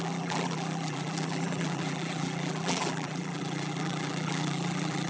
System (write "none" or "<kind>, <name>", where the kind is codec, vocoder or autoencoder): vocoder, BigVGAN v2